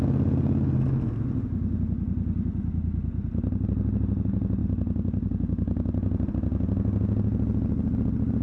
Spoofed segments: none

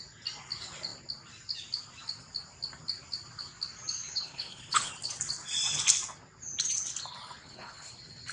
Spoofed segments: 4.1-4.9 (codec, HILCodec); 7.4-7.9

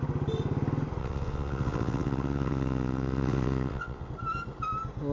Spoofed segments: 1.0-4.1 (vocoder, WaveNeXt)

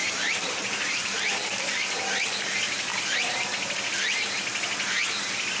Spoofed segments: 0.0-1.8 (vocoder, BigVGAN v2)

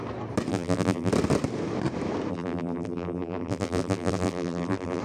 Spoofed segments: 0.5-1.1 (vocoder, BigVGAN v2); 2.3-5.0